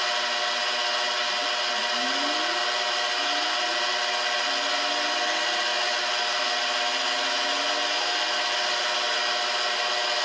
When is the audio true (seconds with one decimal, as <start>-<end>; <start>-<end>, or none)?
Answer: 0.0-10.2